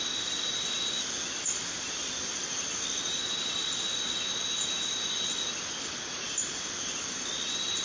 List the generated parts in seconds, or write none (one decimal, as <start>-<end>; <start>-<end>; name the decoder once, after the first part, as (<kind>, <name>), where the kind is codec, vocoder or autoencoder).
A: none